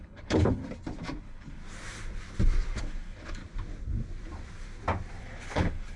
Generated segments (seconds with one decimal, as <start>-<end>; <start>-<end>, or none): 0.0-0.6; 1.2-1.6; 2.8-3.4; 5.2-6.0